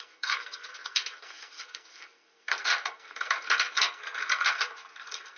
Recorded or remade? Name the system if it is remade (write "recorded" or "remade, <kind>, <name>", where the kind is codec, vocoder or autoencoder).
remade, codec, SNAC